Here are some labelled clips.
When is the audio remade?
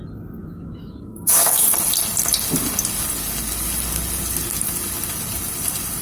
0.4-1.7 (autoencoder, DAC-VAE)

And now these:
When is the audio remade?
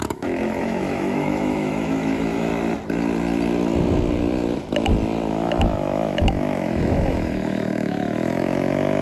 0.0-2.5 (autoencoder, DAC-VAE); 5.3-9.0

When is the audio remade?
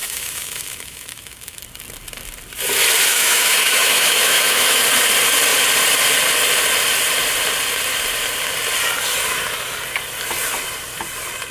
0.0-1.6 (autoencoder, DAC-VAE); 3.1-4.8